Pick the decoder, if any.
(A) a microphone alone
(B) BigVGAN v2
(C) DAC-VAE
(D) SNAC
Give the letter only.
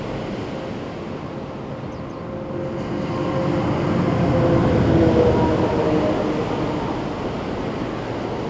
A